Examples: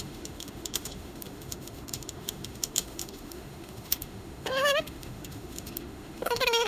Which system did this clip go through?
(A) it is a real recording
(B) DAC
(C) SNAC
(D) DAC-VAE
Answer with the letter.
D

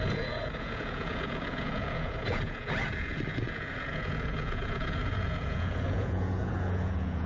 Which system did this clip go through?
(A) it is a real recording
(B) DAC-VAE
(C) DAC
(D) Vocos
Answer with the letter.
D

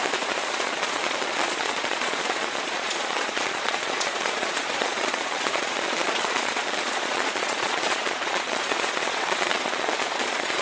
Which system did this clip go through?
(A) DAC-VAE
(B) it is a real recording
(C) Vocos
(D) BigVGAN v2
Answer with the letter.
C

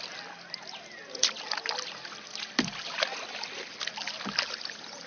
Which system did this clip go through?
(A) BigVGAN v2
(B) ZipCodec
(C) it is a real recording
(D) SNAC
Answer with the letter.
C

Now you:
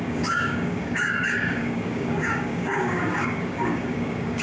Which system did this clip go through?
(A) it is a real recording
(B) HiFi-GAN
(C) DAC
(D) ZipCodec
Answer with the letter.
C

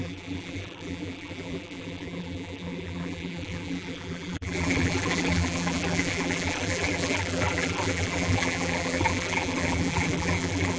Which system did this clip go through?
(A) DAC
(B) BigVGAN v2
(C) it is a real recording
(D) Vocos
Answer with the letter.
B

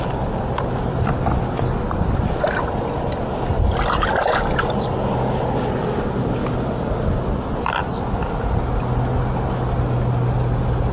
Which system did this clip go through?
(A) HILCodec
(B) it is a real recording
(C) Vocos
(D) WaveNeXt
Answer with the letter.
B